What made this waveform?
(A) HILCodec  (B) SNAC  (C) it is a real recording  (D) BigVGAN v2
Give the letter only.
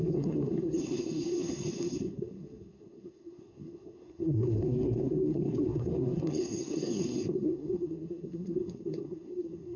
B